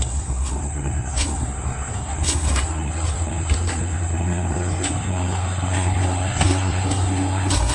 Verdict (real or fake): fake